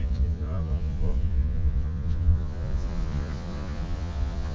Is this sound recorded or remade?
remade